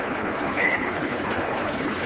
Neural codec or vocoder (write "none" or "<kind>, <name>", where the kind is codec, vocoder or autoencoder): codec, HILCodec